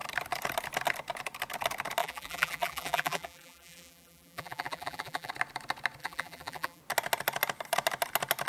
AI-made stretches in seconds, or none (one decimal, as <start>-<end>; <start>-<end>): 2.0-5.3; 6.0-6.8